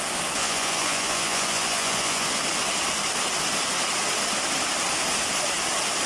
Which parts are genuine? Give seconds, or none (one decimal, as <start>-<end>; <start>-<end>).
0.0-0.4; 2.4-6.1